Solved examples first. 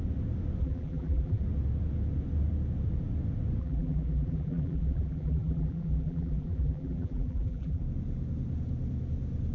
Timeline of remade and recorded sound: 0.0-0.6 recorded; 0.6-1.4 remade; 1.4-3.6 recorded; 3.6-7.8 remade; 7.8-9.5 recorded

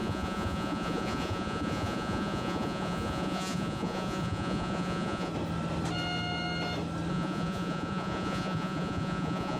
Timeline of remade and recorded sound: 0.0-5.3 remade; 5.3-7.1 recorded; 7.1-9.6 remade

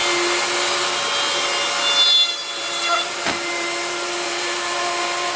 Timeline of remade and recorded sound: 0.0-2.6 recorded; 2.6-5.4 remade

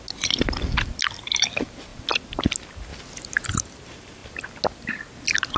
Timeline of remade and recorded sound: 0.0-5.6 recorded

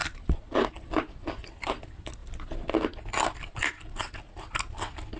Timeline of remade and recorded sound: 0.0-5.2 recorded

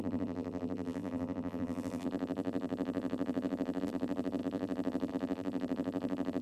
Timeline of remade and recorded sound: 0.0-6.4 remade

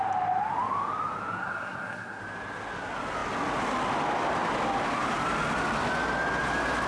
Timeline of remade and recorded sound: 0.0-1.4 recorded; 1.4-2.2 remade; 2.2-6.9 recorded